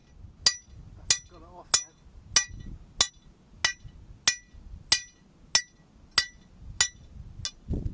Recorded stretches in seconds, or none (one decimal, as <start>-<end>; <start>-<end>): 0.0-7.9